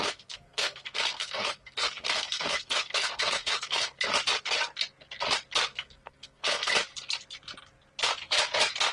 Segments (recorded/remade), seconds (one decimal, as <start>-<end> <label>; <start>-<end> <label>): 0.0-4.0 remade; 4.0-5.7 recorded; 5.7-6.7 remade; 6.7-8.9 recorded